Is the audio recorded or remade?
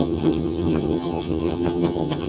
remade